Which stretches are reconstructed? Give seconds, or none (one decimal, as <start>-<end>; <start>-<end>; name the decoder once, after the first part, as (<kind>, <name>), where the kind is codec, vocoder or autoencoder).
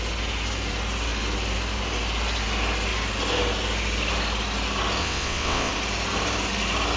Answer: 5.0-5.7 (vocoder, WaveNeXt)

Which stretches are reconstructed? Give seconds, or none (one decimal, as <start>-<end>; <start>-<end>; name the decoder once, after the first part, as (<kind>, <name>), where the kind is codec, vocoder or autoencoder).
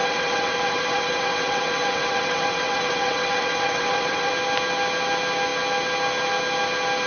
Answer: 0.0-4.3 (vocoder, WaveNeXt)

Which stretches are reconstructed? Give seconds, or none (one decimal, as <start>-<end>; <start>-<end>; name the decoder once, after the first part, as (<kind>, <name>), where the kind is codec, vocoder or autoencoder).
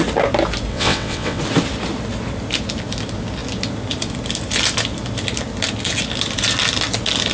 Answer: 0.7-1.4 (vocoder, WaveNeXt)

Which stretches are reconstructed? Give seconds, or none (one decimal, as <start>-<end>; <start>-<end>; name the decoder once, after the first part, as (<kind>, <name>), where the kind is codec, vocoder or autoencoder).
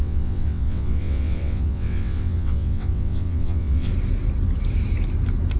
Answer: 0.0-3.9 (vocoder, WaveNeXt)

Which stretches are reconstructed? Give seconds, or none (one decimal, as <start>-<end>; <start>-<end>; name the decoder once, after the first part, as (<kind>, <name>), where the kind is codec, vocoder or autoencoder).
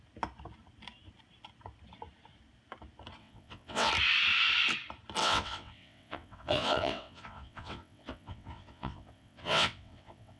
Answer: 3.2-3.9 (vocoder, WaveNeXt); 5.2-10.4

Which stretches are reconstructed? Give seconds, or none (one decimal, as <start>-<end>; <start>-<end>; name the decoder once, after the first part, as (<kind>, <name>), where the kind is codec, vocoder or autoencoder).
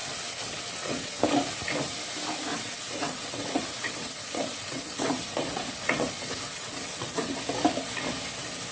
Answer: 0.0-1.1 (vocoder, WaveNeXt); 2.5-7.4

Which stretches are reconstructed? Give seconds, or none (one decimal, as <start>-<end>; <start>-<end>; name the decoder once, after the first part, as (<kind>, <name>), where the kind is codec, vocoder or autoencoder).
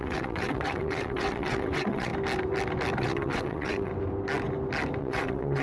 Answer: 0.0-2.1 (vocoder, WaveNeXt); 3.0-3.9; 5.0-5.6